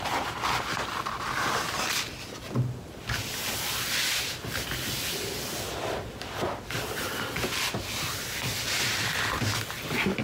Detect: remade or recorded recorded